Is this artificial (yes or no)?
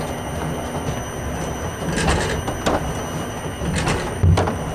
no